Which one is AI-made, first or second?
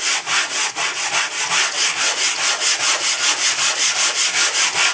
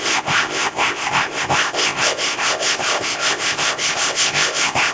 second